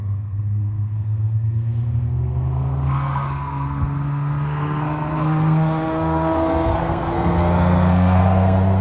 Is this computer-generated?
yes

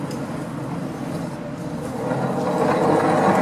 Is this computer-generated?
no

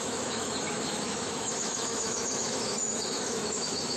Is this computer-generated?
yes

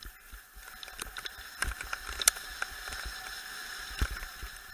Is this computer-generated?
yes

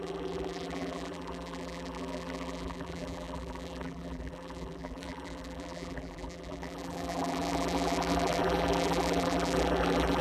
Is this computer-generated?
yes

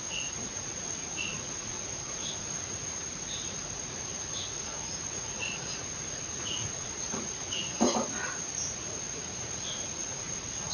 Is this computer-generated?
yes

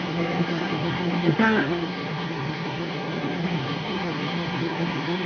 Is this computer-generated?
yes